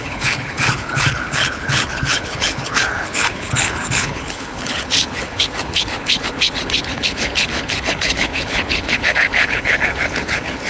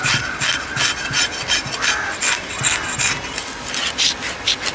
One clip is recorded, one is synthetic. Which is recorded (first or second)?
second